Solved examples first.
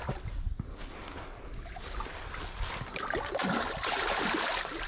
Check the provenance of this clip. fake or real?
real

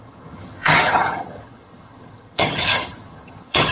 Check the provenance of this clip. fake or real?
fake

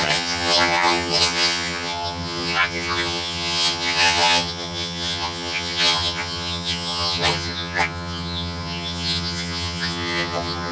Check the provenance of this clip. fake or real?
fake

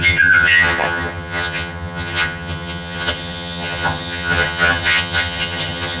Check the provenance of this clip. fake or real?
fake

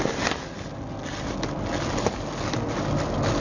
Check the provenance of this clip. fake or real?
real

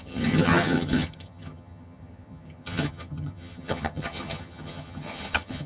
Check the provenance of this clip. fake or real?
fake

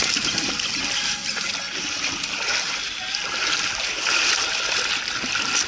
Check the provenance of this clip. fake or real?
real